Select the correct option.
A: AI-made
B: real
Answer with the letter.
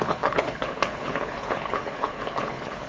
A